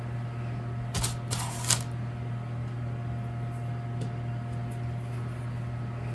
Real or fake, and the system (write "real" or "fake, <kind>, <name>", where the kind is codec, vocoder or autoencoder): real